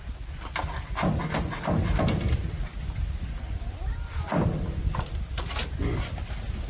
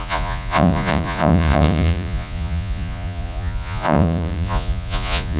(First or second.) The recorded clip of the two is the first